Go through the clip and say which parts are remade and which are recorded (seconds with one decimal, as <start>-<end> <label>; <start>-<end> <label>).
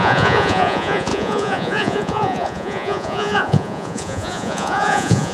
0.0-5.3 remade